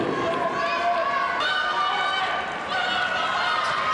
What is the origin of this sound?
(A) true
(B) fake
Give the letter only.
A